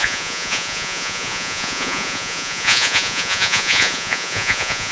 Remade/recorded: remade